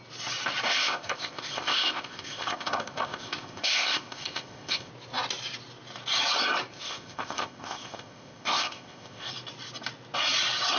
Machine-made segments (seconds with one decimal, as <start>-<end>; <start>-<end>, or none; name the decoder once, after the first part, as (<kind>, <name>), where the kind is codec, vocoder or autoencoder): 0.7-4.9 (codec, ZipCodec); 6.7-9.3